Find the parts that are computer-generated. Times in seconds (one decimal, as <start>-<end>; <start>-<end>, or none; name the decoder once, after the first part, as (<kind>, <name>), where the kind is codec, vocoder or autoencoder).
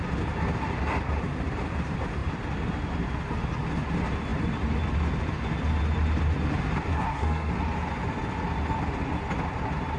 6.9-7.5 (codec, SNAC)